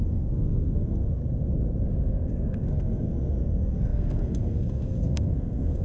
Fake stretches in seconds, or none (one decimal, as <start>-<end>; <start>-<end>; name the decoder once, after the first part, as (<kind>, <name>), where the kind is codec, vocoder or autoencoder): 0.0-1.2 (codec, SNAC); 1.9-5.8